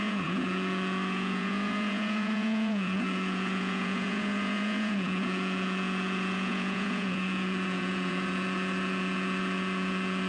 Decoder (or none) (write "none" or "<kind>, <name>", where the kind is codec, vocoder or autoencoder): vocoder, Vocos